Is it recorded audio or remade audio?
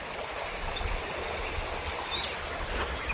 recorded